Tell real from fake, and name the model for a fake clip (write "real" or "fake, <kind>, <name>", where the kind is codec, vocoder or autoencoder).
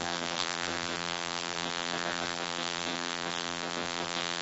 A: fake, vocoder, BigVGAN v2